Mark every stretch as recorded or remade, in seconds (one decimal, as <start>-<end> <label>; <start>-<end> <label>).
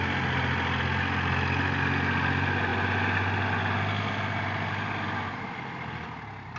0.0-6.6 recorded